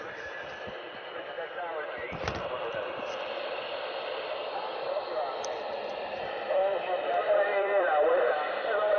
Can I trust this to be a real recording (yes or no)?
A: no